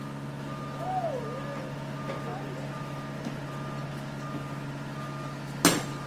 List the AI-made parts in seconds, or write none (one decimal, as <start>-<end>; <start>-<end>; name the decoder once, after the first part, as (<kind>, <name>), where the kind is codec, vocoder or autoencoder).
none